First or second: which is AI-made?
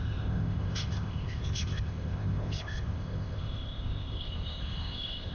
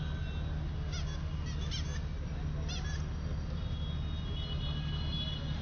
first